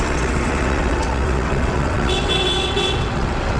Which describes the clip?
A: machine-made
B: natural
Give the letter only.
A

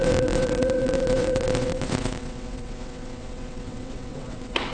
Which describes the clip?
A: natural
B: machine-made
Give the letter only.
B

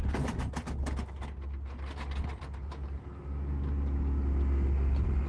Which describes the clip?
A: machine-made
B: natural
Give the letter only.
B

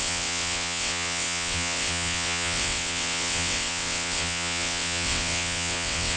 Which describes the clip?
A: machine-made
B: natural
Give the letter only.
A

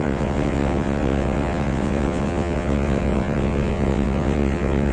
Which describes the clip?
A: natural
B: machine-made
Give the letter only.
B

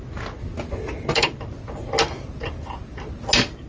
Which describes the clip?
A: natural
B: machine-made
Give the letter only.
A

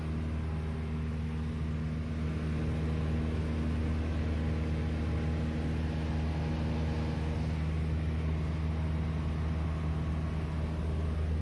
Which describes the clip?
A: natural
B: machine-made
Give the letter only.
A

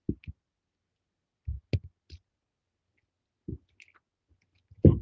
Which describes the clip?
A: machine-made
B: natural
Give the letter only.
B